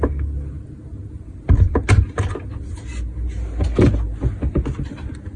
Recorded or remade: recorded